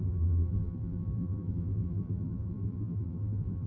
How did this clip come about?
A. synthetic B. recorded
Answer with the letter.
A